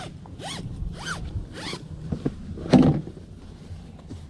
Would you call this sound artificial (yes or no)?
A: no